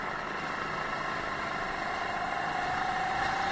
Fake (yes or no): no